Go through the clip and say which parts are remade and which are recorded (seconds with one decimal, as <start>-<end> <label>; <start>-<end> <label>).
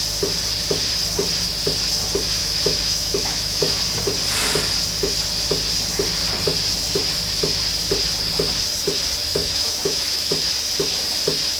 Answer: 0.0-2.4 recorded; 2.4-3.8 remade; 3.8-9.4 recorded; 9.4-10.3 remade; 10.3-11.6 recorded